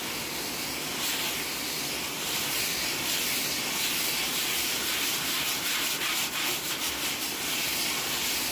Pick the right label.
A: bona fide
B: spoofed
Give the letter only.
A